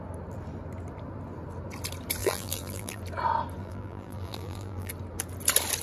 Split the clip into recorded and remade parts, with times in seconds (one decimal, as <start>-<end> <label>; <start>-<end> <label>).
0.0-2.2 recorded; 2.2-3.0 remade; 3.0-3.6 recorded; 3.6-4.9 remade; 4.9-5.8 recorded